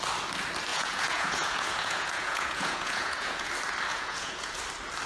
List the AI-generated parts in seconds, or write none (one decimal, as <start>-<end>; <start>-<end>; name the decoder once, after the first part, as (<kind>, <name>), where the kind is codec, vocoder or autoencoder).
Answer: 0.7-3.5 (vocoder, Vocos); 3.9-4.6